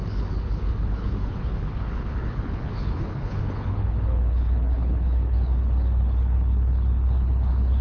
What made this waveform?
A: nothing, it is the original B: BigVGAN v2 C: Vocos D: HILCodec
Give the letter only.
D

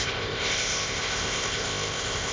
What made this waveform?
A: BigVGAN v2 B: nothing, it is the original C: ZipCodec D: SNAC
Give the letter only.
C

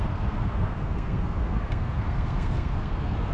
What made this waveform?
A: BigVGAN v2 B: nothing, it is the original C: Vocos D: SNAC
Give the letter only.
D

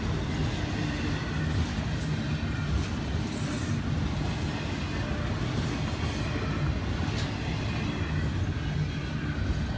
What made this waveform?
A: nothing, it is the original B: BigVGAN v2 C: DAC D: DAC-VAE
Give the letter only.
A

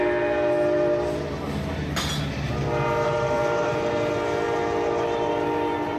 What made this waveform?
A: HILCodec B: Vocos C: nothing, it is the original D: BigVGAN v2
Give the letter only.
C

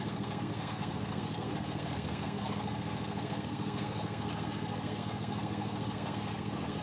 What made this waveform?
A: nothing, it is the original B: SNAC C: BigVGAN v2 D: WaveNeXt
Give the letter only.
B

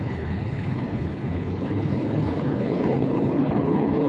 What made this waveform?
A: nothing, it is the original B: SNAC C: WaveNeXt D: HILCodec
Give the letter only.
D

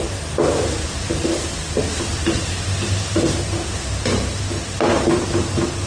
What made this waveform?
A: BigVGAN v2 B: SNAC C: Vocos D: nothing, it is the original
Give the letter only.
D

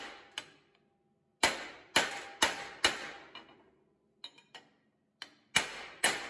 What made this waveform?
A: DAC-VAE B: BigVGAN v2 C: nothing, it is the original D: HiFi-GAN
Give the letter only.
C